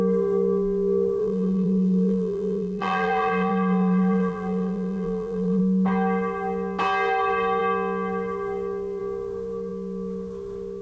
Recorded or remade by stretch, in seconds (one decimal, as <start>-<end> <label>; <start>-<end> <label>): 0.0-1.2 recorded; 1.2-5.6 remade; 5.6-10.8 recorded